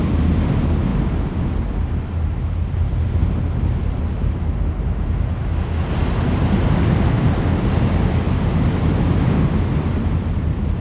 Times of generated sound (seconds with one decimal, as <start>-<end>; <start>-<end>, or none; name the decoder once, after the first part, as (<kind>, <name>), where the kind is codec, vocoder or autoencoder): none